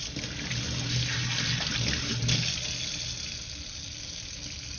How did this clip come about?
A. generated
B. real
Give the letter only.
B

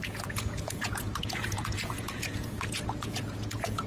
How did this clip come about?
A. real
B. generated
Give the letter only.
B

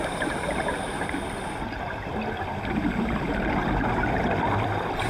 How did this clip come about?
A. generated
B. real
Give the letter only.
B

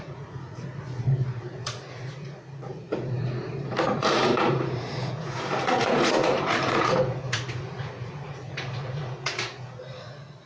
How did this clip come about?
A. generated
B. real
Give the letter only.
A